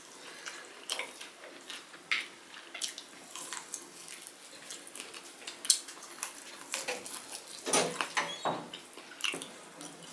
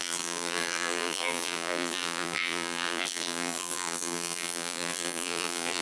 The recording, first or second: first